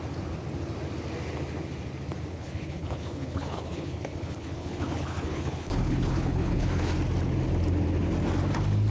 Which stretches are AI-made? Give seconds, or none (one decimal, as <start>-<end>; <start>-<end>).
2.3-6.9